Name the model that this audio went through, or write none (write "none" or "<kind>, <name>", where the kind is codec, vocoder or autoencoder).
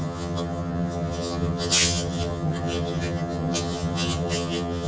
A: vocoder, HiFi-GAN